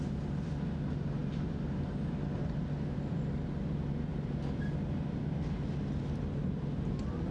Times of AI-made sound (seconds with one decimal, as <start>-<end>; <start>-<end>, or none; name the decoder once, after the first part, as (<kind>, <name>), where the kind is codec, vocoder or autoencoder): none